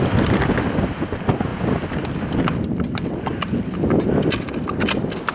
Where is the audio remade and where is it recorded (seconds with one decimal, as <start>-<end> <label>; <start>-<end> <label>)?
0.0-5.3 recorded